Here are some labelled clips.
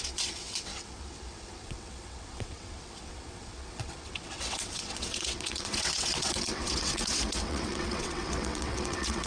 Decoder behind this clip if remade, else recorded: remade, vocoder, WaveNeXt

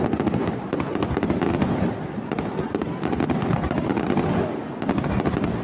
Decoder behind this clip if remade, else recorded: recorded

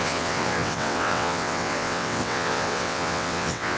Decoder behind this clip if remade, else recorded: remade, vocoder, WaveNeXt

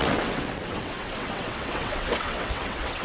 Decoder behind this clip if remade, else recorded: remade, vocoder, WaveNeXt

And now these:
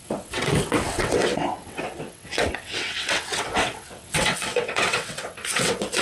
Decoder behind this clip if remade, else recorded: remade, vocoder, WaveNeXt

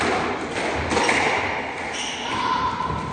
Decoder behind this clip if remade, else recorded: recorded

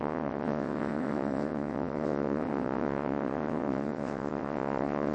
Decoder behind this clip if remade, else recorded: remade, vocoder, WaveNeXt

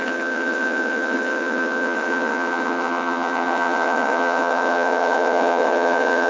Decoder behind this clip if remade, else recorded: remade, vocoder, WaveNeXt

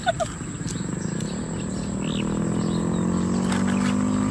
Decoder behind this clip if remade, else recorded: recorded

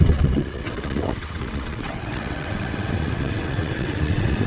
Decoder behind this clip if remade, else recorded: remade, vocoder, WaveNeXt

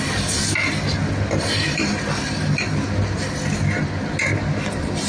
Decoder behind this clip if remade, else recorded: recorded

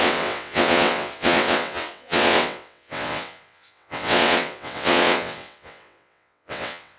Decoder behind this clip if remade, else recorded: remade, vocoder, WaveNeXt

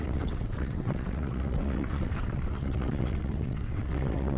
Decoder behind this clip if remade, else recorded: remade, vocoder, WaveNeXt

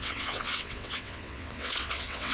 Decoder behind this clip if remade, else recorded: remade, vocoder, WaveNeXt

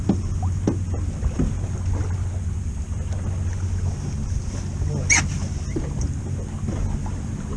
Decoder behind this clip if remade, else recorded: recorded